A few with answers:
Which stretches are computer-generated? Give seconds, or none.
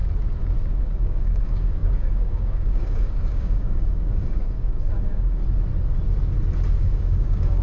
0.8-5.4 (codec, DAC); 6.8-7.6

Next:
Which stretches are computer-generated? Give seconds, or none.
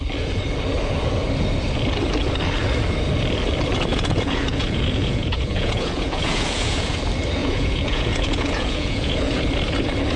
3.9-7.0 (vocoder, Vocos); 7.4-9.4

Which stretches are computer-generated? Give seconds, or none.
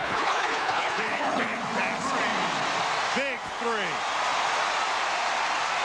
0.0-1.6 (codec, HILCodec)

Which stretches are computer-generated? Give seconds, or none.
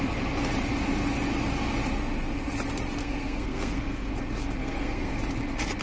3.0-4.1 (codec, SNAC); 4.6-5.1